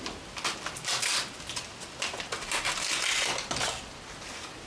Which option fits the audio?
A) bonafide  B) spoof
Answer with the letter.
A